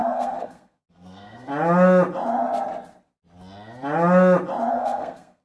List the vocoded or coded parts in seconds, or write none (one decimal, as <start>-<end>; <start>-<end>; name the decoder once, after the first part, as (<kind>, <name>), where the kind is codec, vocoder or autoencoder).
0.0-1.5 (codec, SNAC); 4.7-5.4